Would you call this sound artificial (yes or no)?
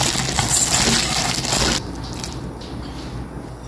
no